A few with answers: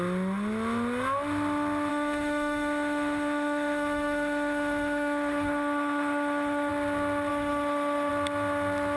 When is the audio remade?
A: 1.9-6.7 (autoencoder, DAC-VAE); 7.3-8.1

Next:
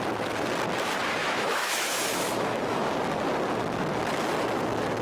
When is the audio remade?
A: 1.2-2.9 (autoencoder, DAC-VAE)